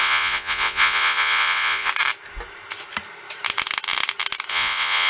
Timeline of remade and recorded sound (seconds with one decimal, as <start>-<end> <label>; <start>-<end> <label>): 0.0-1.9 remade; 1.9-4.5 recorded; 4.5-5.1 remade